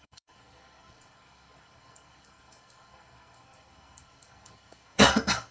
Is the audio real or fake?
fake